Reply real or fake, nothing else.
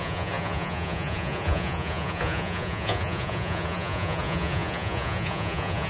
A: fake